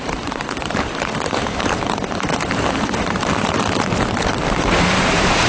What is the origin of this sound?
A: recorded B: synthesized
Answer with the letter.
B